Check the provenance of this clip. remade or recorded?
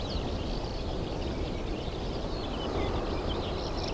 recorded